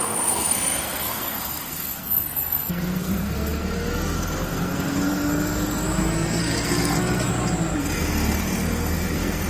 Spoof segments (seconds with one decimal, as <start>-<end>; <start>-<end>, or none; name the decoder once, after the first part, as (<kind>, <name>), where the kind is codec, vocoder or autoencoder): 0.0-7.3 (codec, SNAC); 7.8-9.5